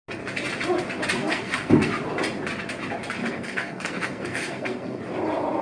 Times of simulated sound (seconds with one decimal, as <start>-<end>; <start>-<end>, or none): 1.2-1.9; 3.2-5.0